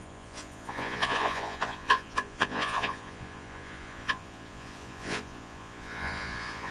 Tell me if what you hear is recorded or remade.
remade